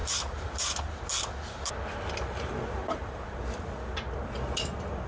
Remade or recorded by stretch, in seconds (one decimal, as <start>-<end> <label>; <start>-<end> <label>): 0.0-1.0 remade; 1.0-2.8 recorded; 2.8-3.6 remade; 3.6-5.1 recorded